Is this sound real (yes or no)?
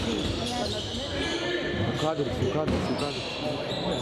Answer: yes